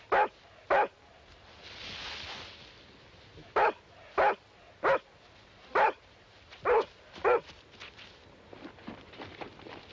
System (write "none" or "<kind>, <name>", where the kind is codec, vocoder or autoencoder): none